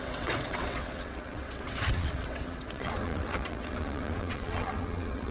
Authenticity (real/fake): fake